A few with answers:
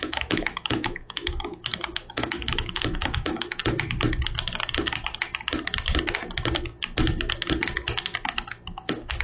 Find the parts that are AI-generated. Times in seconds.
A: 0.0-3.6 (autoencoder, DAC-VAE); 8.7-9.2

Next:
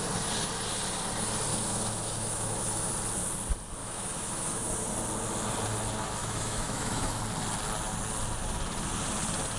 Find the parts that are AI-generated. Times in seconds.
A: 1.5-2.9 (autoencoder, DAC-VAE); 3.8-4.7; 6.2-7.2

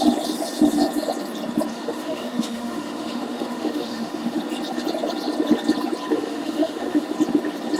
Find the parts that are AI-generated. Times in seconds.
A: 1.7-4.4 (autoencoder, DAC-VAE); 6.1-7.0